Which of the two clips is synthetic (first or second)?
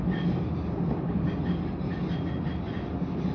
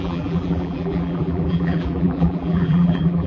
second